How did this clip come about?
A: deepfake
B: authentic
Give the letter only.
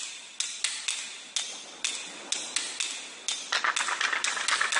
B